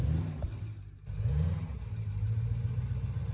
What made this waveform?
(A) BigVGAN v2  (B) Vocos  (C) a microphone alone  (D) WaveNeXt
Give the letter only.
C